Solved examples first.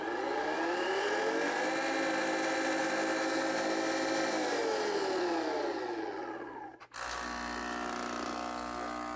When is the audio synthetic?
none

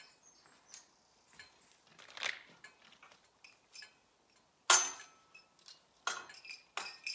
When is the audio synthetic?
none

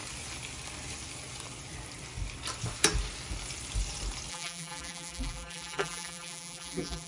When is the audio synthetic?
4.3-7.1 (vocoder, BigVGAN v2)